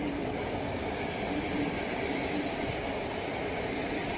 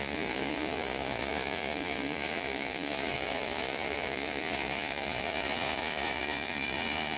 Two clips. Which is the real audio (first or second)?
first